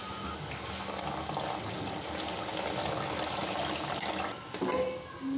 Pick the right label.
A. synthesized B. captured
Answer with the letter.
B